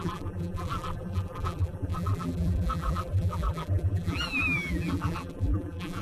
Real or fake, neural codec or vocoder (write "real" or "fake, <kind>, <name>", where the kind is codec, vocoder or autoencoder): fake, vocoder, BigVGAN v2